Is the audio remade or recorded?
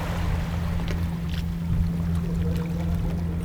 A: recorded